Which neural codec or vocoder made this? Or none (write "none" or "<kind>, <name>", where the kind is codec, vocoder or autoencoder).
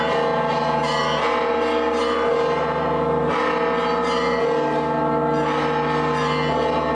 none